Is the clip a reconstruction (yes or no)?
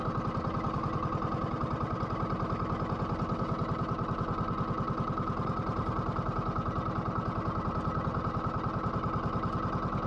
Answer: no